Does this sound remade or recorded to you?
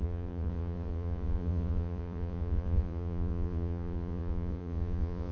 remade